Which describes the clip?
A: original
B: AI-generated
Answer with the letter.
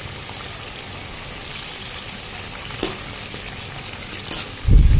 A